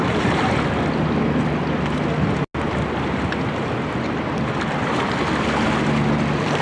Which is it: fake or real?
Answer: real